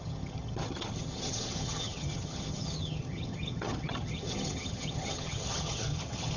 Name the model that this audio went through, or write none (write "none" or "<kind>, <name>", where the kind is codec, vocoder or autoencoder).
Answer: vocoder, HiFi-GAN